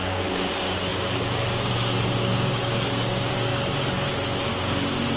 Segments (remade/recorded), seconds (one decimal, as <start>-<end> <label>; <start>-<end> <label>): 0.0-3.5 remade; 3.5-4.5 recorded; 4.5-5.2 remade